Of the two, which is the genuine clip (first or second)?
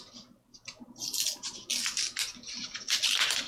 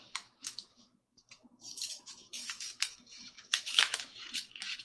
first